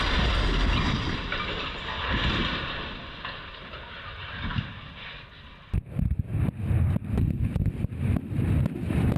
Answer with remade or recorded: recorded